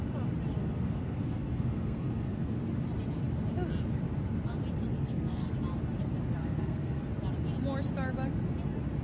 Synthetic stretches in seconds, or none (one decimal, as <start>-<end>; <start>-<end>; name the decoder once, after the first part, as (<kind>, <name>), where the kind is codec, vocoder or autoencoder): 0.6-2.6 (codec, SNAC); 4.9-5.5; 6.4-7.1